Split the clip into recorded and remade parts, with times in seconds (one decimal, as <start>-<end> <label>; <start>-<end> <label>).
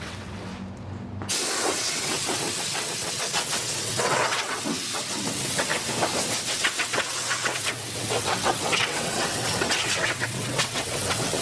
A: 0.0-0.5 remade; 0.5-1.5 recorded; 1.5-5.7 remade; 5.7-6.5 recorded; 6.5-11.4 remade